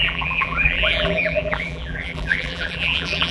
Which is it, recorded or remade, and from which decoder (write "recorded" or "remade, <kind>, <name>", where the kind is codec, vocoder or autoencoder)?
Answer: remade, vocoder, BigVGAN v2